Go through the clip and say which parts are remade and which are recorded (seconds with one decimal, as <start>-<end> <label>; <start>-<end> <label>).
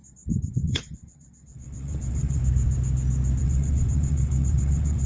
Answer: 0.0-0.5 recorded; 0.5-2.4 remade; 2.4-3.4 recorded; 3.4-5.1 remade